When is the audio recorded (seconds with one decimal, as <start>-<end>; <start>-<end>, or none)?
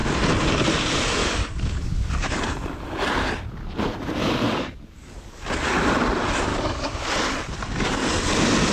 0.0-1.2; 2.1-4.2; 5.4-6.5; 7.0-8.7